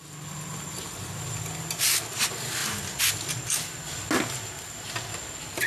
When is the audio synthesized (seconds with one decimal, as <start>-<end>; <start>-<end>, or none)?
none